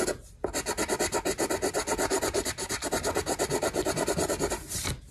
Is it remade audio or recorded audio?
recorded